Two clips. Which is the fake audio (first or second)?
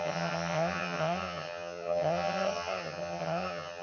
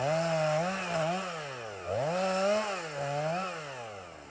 first